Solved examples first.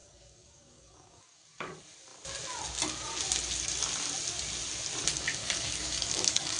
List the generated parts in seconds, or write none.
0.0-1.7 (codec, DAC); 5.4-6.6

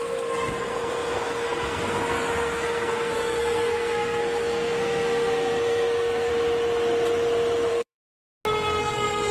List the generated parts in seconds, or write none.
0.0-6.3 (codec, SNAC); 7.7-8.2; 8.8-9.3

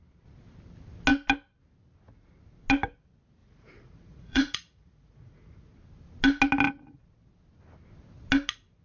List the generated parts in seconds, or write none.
3.4-5.7 (vocoder, Vocos)